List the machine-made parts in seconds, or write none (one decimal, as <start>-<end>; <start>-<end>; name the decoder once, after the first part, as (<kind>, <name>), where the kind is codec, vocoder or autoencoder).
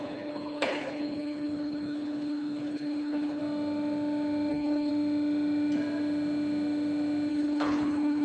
0.0-3.4 (codec, HILCodec); 4.5-4.9; 7.3-8.2